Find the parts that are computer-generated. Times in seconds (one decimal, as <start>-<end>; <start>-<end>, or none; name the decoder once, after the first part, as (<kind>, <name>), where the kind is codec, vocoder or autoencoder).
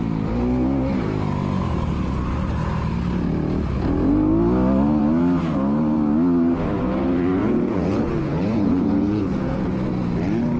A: 7.4-9.7 (vocoder, Vocos)